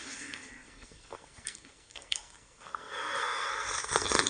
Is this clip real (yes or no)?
no